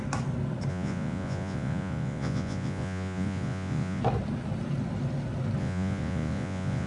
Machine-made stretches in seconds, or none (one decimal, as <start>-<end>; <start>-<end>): 0.7-4.0; 5.6-6.9